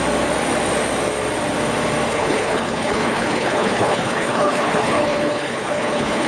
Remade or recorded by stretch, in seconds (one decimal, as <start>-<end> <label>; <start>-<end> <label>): 0.0-2.1 recorded; 2.1-6.3 remade